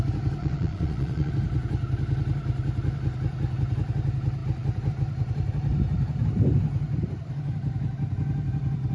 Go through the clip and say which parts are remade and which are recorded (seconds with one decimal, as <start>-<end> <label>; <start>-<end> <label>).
0.0-0.4 recorded; 0.4-1.3 remade; 1.3-8.9 recorded

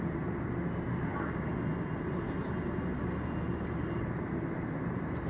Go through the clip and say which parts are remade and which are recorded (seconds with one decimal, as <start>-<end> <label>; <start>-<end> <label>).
0.0-5.3 recorded

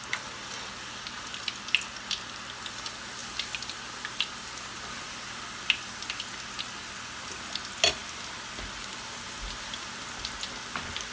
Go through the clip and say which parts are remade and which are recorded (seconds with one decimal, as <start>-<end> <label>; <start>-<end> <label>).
0.0-11.1 recorded

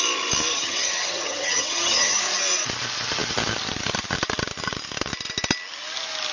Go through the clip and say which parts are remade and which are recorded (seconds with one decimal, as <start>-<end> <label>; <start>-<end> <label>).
0.0-0.5 recorded; 0.5-2.2 remade; 2.2-6.3 recorded

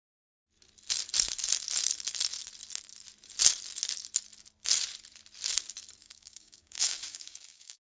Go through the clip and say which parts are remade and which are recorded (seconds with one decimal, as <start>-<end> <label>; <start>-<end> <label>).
0.0-6.0 recorded; 6.0-7.8 remade

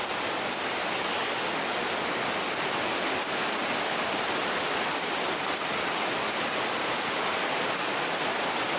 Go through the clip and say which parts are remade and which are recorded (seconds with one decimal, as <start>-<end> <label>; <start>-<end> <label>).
0.0-8.8 recorded